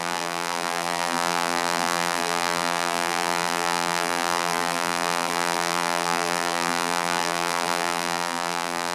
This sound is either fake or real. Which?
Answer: fake